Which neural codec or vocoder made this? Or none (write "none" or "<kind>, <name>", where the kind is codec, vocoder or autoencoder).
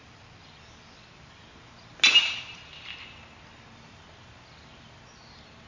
none